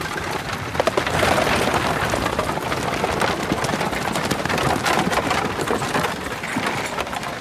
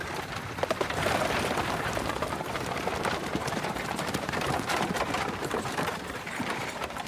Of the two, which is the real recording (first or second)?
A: first